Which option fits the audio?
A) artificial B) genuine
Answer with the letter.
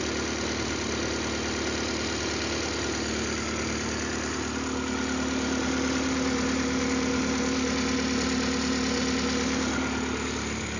B